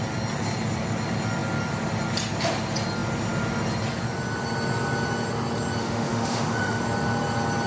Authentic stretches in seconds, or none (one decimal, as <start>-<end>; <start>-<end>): 0.0-5.8; 6.8-7.7